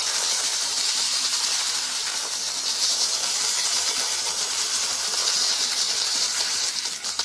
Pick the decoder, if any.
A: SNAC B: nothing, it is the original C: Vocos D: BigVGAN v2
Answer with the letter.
D